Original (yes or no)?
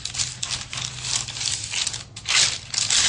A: yes